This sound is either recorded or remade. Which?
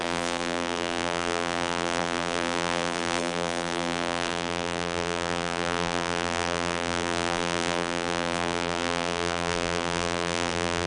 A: remade